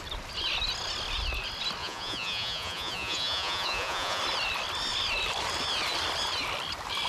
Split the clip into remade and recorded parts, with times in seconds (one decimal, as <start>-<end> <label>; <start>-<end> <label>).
0.0-1.8 recorded; 1.8-4.2 remade; 4.2-7.1 recorded